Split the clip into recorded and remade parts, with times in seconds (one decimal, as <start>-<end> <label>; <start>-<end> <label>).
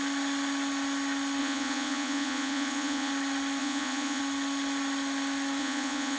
0.0-1.4 recorded; 1.4-3.1 remade; 3.1-3.6 recorded; 3.6-4.2 remade; 4.2-5.6 recorded; 5.6-6.2 remade